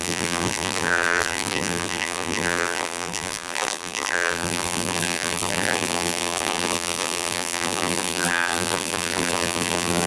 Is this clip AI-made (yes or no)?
yes